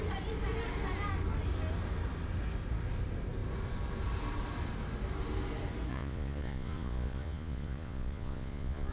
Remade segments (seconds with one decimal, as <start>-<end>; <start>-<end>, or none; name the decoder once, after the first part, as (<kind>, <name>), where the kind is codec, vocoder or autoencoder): 5.9-8.9 (vocoder, Vocos)